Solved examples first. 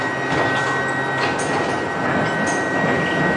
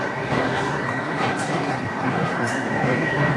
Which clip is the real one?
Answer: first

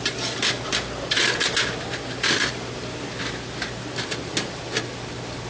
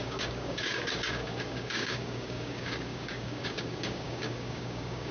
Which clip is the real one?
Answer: first